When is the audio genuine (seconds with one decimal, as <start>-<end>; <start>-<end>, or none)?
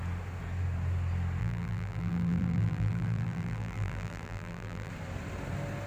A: 0.0-1.4; 4.9-5.9